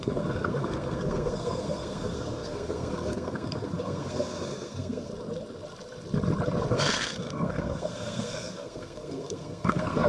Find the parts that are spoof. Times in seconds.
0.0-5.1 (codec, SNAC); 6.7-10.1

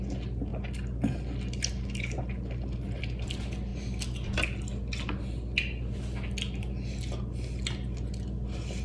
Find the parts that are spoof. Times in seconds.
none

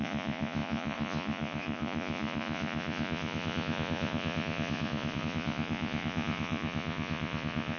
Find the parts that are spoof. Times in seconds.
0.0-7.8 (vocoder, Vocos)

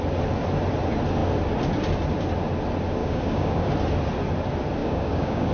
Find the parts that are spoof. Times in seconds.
3.0-3.7 (codec, DAC); 4.8-5.5

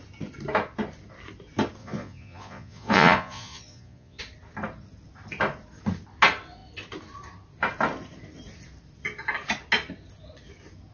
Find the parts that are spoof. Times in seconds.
1.8-4.2 (vocoder, Vocos)

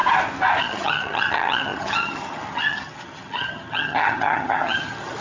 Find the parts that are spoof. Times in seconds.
0.6-5.2 (vocoder, HiFi-GAN)